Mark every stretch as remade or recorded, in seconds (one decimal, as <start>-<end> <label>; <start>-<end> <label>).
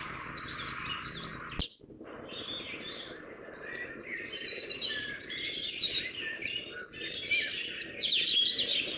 0.0-1.3 remade; 1.3-2.3 recorded; 2.3-9.0 remade